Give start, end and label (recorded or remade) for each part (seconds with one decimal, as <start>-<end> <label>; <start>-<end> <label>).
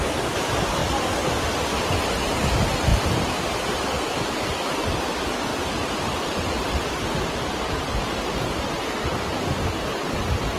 0.0-2.9 recorded; 2.9-3.7 remade; 3.7-5.5 recorded; 5.5-6.2 remade; 6.2-10.6 recorded